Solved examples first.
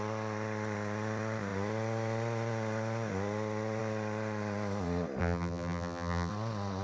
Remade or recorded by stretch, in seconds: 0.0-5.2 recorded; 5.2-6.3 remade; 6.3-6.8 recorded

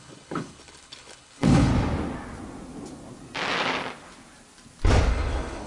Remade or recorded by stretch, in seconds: 0.0-1.7 remade; 1.7-5.1 recorded; 5.1-5.7 remade

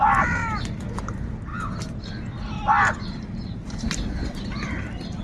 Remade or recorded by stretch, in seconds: 0.0-0.4 remade; 0.4-1.0 recorded; 1.0-1.5 remade; 1.5-3.0 recorded; 3.0-5.2 remade

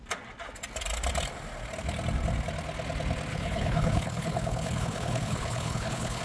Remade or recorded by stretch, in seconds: 0.0-3.3 recorded; 3.3-6.2 remade